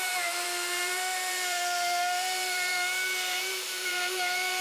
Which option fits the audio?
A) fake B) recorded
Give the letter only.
A